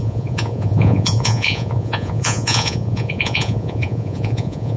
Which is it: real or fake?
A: fake